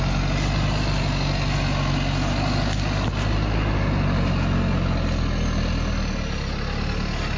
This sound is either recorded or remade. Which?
recorded